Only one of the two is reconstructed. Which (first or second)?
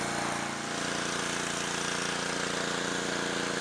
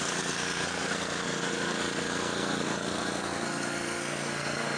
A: second